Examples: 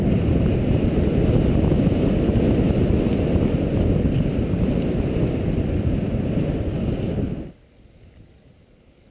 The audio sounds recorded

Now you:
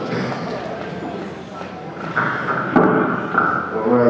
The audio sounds recorded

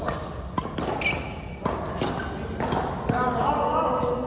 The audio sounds recorded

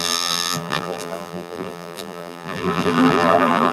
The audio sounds remade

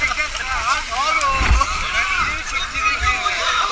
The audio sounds recorded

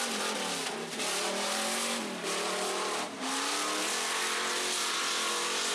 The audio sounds recorded